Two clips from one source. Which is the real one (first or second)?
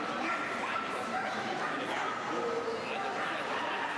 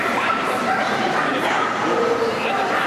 first